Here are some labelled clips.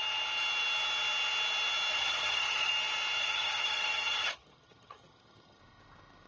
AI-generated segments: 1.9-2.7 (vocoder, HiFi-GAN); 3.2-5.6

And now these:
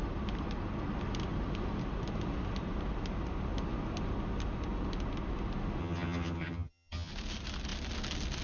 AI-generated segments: 5.8-7.1 (vocoder, HiFi-GAN)

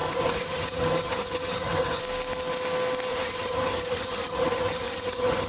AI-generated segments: 0.0-2.0 (vocoder, HiFi-GAN); 3.1-5.5

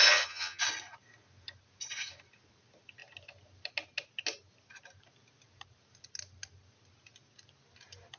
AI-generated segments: 0.0-0.6 (vocoder, HiFi-GAN)

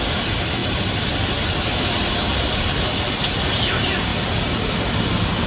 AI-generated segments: none

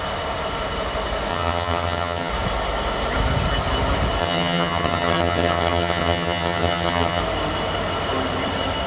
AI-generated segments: 1.3-2.3 (vocoder, HiFi-GAN); 4.2-7.2

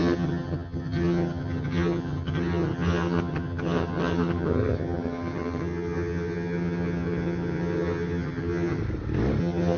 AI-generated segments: 0.0-8.8 (vocoder, HiFi-GAN); 9.4-9.8

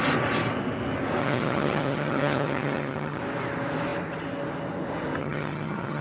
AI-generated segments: 1.2-3.2 (vocoder, HiFi-GAN); 5.2-6.0